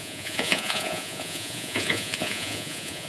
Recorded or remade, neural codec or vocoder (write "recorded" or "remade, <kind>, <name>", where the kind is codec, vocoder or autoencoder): remade, vocoder, Vocos